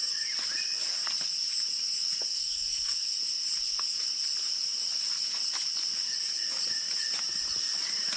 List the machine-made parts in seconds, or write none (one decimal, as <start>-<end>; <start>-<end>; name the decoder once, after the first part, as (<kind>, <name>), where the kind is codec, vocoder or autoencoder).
2.3-3.1 (codec, SNAC)

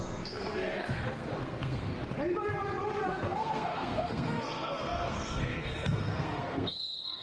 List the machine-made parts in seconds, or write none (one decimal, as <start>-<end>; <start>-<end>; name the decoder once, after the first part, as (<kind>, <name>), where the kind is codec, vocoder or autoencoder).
0.0-1.9 (codec, SNAC); 3.1-7.2

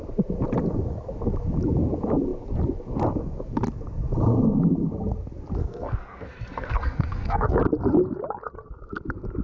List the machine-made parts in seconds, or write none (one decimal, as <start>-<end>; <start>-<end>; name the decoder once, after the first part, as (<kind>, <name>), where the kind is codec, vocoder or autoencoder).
5.6-7.6 (codec, SNAC)

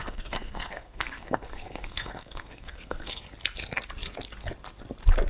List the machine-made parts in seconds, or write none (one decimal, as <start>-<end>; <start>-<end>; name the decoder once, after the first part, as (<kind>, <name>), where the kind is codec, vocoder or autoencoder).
0.0-3.2 (codec, SNAC)

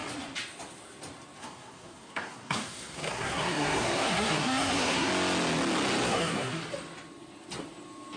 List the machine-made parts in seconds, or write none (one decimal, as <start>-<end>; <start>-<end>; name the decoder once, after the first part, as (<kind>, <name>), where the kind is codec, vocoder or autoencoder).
1.4-5.1 (codec, SNAC); 6.1-6.6

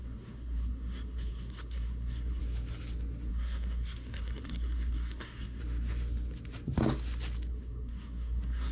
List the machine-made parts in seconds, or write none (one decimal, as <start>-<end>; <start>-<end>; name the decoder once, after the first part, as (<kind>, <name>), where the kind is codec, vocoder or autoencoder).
0.0-2.4 (codec, SNAC); 3.3-5.6; 7.5-8.7

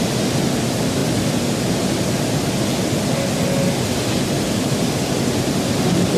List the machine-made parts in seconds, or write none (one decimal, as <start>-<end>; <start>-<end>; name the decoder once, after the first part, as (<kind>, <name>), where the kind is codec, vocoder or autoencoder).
none

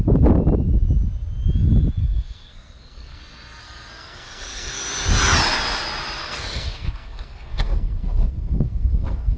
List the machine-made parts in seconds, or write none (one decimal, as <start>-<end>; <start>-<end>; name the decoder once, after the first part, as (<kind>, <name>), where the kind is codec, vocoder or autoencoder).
2.0-3.2 (codec, SNAC); 3.6-4.8; 6.2-9.4